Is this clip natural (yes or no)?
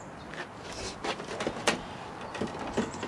yes